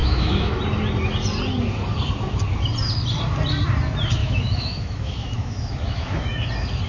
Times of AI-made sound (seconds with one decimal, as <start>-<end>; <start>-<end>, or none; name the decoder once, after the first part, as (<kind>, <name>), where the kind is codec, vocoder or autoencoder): 0.0-0.6 (autoencoder, DAC-VAE); 4.2-6.5